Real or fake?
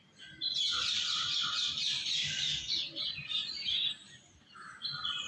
fake